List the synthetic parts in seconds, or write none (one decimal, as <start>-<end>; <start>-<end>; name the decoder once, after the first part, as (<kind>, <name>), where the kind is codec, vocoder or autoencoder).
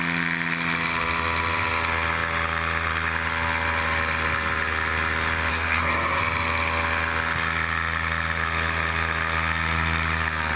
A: 5.5-6.2 (codec, SNAC)